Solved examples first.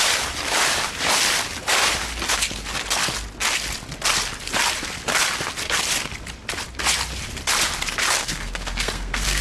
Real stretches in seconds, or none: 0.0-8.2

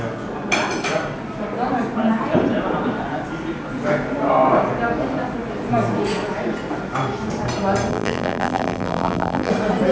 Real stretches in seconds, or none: 0.0-7.9; 9.5-9.9

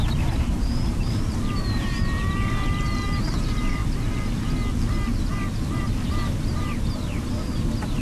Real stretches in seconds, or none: 3.8-5.8